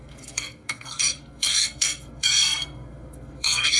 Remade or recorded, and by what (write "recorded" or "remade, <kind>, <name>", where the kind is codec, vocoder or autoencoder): remade, codec, SNAC